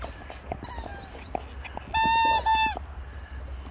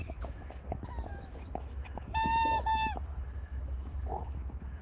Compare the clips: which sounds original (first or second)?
first